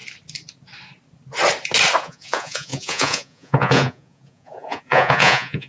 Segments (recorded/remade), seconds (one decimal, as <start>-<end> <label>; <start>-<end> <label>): 0.0-2.0 recorded; 2.0-5.7 remade